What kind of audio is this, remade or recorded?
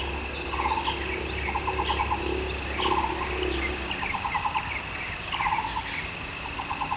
recorded